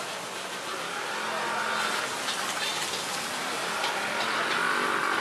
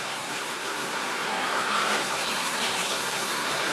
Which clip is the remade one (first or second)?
second